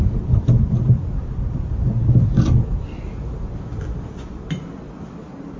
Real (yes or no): yes